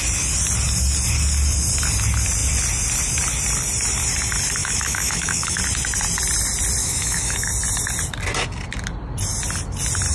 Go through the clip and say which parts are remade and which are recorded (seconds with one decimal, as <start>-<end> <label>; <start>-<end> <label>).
0.0-4.6 recorded; 4.6-5.6 remade; 5.6-6.8 recorded; 6.8-7.5 remade; 7.5-10.1 recorded